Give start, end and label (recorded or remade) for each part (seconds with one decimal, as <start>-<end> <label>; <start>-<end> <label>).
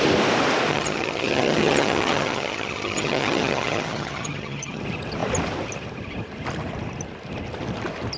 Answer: 0.0-0.7 recorded; 0.7-4.8 remade; 4.8-8.2 recorded